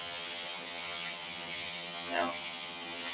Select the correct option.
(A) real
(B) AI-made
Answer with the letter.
B